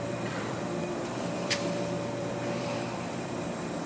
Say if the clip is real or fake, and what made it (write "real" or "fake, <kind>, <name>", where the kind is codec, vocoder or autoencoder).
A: fake, vocoder, BigVGAN v2